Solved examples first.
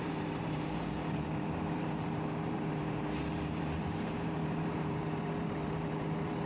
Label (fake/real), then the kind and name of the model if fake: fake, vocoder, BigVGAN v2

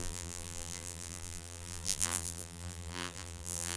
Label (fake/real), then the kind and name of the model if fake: fake, vocoder, BigVGAN v2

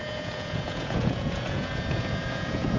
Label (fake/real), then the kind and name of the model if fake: fake, vocoder, Vocos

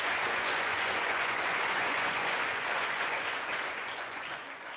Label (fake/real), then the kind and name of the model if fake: fake, vocoder, Vocos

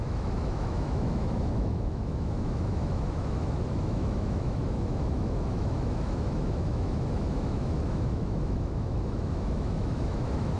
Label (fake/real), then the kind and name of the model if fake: fake, autoencoder, DAC-VAE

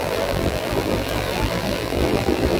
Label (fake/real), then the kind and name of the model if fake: fake, vocoder, BigVGAN v2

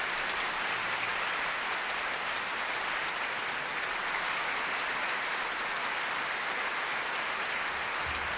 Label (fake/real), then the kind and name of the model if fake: real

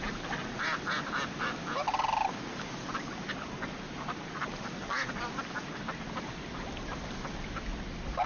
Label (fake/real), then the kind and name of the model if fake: real